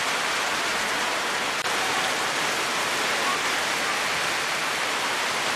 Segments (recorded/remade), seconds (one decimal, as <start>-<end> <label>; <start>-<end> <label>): 0.0-5.6 recorded